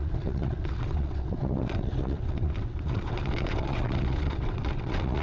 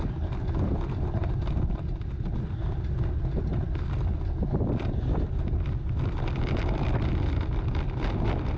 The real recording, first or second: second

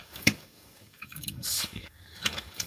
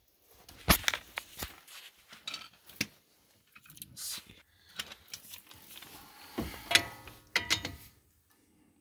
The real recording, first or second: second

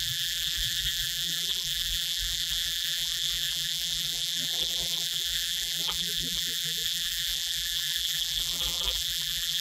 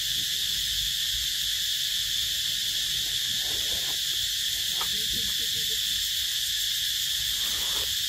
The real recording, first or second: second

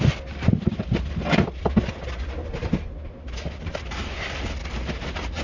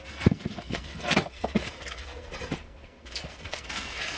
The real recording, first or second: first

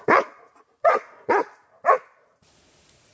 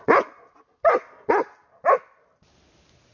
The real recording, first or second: second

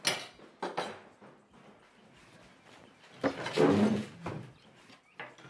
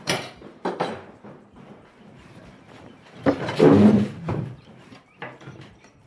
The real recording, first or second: first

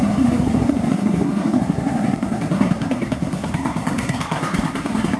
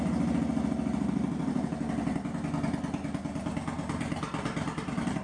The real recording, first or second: second